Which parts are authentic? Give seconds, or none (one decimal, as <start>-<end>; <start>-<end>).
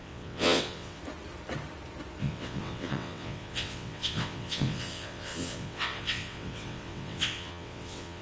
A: 1.0-2.2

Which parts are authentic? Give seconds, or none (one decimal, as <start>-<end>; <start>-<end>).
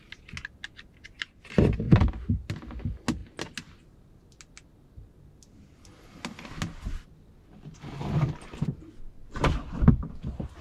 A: 0.0-9.2; 9.9-10.6